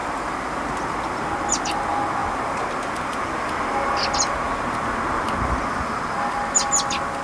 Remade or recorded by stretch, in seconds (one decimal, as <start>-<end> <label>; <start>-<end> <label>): 0.0-7.2 recorded